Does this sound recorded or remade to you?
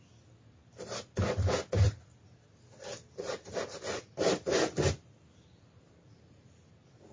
recorded